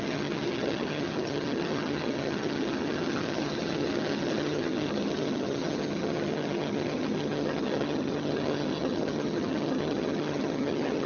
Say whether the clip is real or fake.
fake